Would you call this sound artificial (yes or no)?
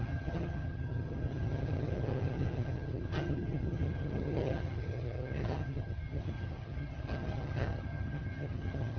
yes